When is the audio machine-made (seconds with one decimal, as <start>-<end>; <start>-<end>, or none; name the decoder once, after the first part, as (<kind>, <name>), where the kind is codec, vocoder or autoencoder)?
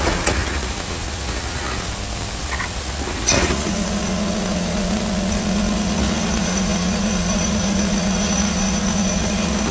0.0-1.9 (vocoder, Vocos); 2.4-9.7